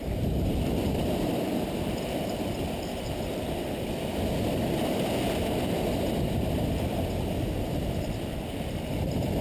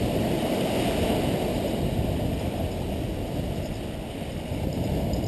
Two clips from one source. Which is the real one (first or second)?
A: second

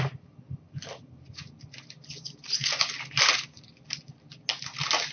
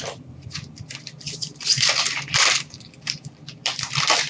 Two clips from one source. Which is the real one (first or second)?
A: first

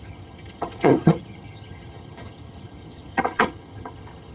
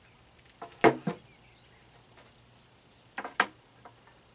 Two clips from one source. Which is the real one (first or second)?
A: second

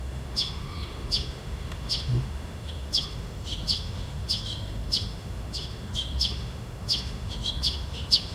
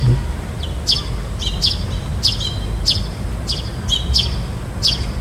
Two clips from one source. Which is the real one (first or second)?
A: second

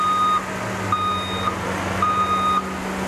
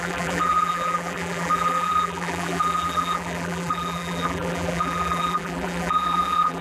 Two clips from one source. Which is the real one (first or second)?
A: first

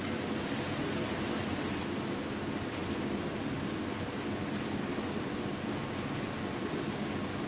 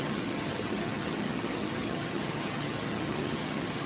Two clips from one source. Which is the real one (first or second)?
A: first